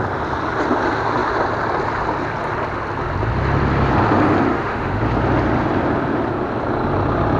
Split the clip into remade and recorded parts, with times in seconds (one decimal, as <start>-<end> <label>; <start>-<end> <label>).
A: 0.0-4.5 recorded; 4.5-5.0 remade; 5.0-7.4 recorded